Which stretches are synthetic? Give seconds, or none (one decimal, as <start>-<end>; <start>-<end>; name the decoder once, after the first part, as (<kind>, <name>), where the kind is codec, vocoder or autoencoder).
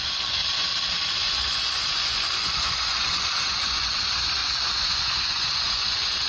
0.0-0.4 (vocoder, Vocos); 1.1-6.3